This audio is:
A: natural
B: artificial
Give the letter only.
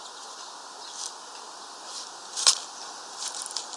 A